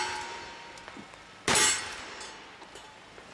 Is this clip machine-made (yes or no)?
no